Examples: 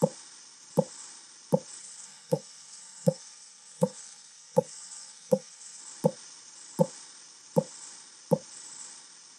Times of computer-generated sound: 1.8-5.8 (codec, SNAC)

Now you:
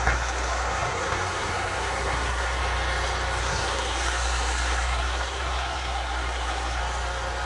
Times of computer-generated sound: 0.0-2.6 (codec, SNAC); 3.4-6.8

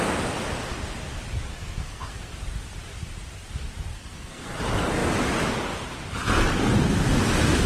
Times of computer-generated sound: 1.5-2.3 (codec, SNAC); 3.9-4.6

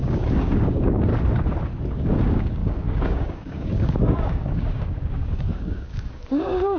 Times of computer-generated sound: 0.0-1.1 (codec, DAC); 1.9-6.8

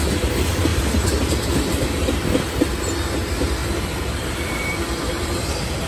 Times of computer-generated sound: 3.6-5.9 (vocoder, BigVGAN v2)

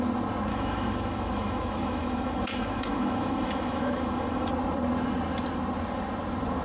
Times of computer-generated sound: 0.5-4.5 (autoencoder, DAC-VAE)